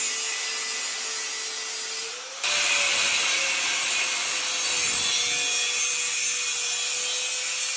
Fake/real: real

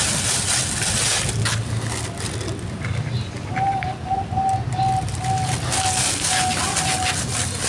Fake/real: real